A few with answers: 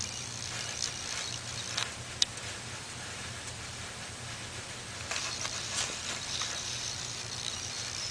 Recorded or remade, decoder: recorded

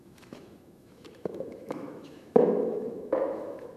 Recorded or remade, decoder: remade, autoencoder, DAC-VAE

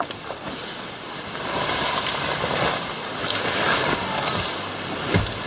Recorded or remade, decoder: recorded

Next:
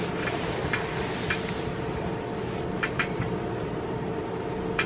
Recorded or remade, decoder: recorded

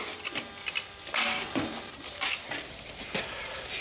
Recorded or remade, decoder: recorded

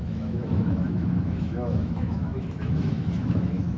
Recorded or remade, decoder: remade, autoencoder, DAC-VAE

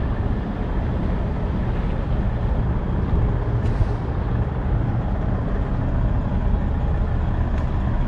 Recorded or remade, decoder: recorded